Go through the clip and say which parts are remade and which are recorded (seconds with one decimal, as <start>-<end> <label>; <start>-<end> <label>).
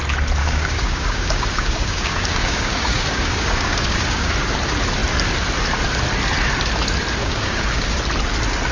0.0-0.4 recorded; 0.4-4.3 remade; 4.3-7.2 recorded; 7.2-8.0 remade; 8.0-8.7 recorded